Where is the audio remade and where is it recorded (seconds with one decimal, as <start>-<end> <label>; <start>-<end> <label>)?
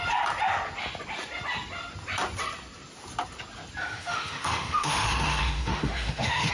0.0-3.8 recorded; 3.8-6.5 remade